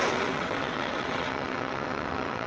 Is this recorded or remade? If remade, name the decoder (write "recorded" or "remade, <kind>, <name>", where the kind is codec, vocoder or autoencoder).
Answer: remade, vocoder, WaveNeXt